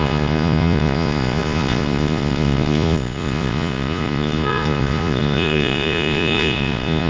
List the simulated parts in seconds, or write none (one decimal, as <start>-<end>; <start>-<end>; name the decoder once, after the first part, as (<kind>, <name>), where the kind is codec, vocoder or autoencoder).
0.0-7.1 (vocoder, Vocos)